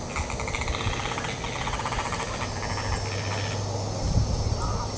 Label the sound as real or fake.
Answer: real